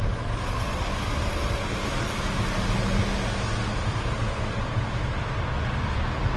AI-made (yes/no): no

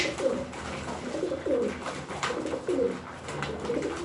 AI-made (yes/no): no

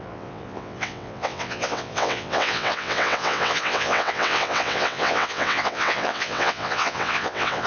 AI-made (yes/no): yes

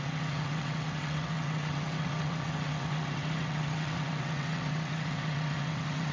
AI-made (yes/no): yes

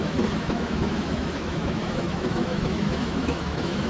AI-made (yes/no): yes